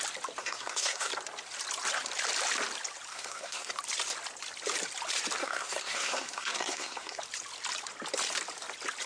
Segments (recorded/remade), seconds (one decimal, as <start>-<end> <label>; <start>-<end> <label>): 0.0-0.4 recorded; 0.4-1.1 remade; 1.1-3.1 recorded; 3.1-3.7 remade; 3.7-5.4 recorded; 5.4-7.2 remade; 7.2-9.1 recorded